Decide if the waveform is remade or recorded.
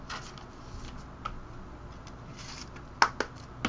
recorded